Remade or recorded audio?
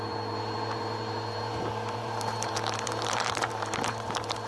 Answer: remade